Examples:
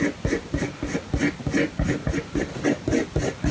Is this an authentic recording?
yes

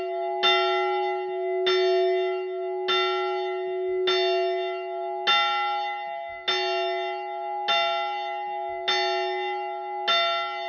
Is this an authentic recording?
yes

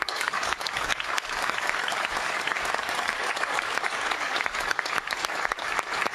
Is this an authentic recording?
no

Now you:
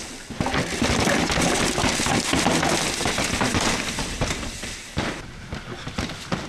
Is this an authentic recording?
yes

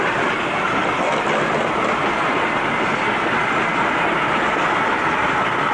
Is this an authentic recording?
yes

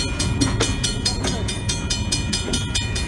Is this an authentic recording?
no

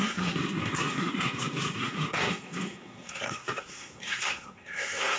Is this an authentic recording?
no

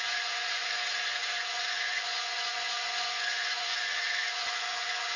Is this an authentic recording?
no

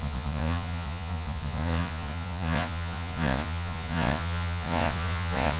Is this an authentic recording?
no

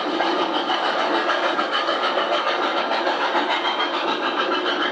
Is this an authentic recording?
no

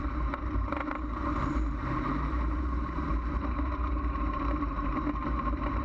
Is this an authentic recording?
no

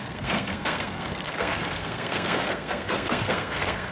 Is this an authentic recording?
no